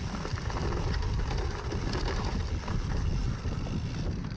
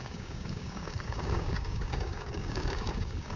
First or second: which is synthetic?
second